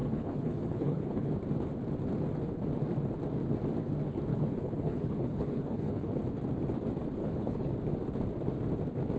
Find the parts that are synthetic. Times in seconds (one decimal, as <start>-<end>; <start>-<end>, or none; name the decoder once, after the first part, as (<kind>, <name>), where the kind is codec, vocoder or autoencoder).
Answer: 0.0-1.3 (codec, HILCodec); 4.3-6.2; 7.2-7.7